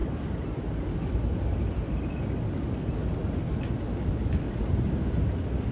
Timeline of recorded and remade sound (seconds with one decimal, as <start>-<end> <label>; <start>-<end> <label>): 0.0-5.7 recorded